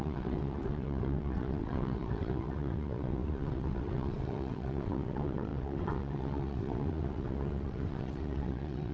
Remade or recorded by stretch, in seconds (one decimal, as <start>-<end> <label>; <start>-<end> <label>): 0.0-8.9 remade